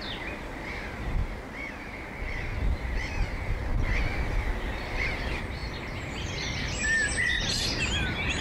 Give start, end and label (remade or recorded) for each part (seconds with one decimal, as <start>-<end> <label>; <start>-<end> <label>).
0.0-1.2 remade; 1.2-2.6 recorded; 2.6-3.6 remade; 3.6-4.7 recorded; 4.7-8.4 remade